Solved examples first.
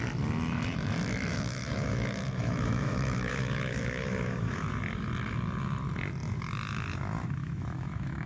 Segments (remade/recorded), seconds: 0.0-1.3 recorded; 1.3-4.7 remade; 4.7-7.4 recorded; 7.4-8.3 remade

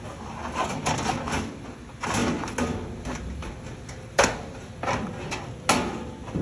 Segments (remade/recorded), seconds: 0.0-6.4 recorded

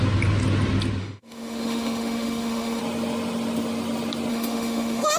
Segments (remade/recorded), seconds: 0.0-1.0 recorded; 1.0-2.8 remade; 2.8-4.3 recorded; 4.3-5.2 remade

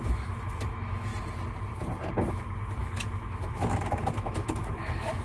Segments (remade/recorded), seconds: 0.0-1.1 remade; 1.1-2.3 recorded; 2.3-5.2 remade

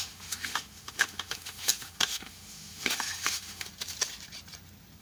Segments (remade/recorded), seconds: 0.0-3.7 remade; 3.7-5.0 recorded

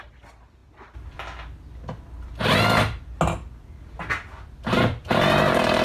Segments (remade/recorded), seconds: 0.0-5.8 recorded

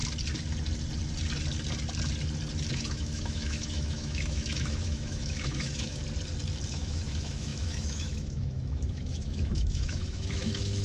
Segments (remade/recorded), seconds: 0.0-2.7 recorded; 2.7-6.0 remade; 6.0-6.7 recorded; 6.7-10.8 remade

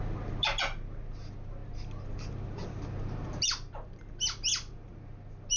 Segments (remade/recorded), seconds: 0.0-5.6 recorded